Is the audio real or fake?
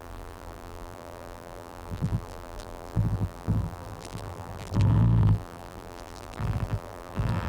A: fake